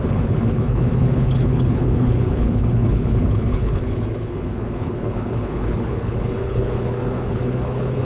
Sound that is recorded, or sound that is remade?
remade